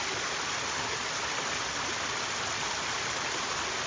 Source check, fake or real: real